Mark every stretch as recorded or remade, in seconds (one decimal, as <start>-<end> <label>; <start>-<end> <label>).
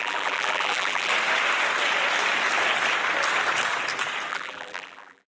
0.0-1.1 remade; 1.1-4.3 recorded; 4.3-5.3 remade